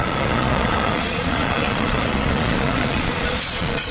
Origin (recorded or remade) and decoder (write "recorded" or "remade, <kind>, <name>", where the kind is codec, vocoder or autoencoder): remade, vocoder, Vocos